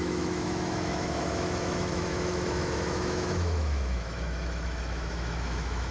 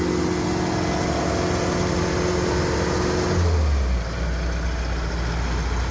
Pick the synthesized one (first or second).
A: first